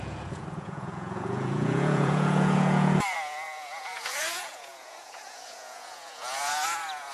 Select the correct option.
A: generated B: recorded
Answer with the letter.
A